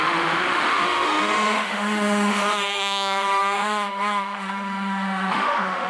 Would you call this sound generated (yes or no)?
yes